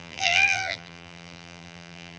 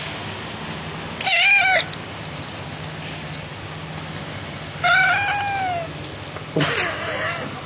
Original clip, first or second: second